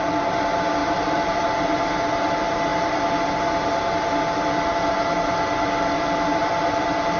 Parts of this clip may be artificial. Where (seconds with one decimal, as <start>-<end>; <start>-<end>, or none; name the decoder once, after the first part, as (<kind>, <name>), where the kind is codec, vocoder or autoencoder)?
0.8-1.4 (vocoder, BigVGAN v2)